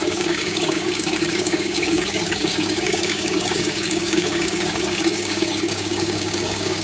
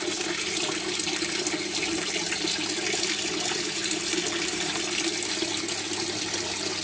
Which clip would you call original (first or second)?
second